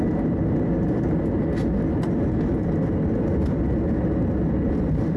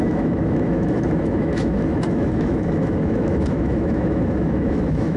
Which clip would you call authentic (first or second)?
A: first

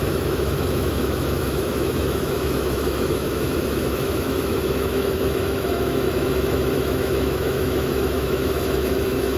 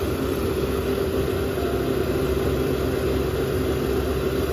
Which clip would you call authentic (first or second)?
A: second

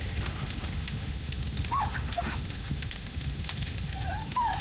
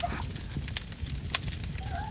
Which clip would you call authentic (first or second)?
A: second